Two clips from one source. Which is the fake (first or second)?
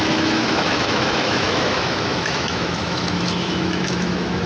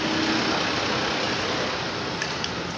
first